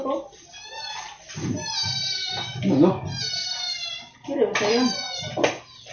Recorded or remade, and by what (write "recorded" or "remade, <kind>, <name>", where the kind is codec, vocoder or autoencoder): recorded